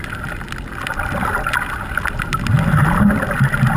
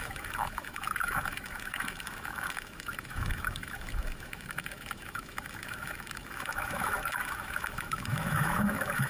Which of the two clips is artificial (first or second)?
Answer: second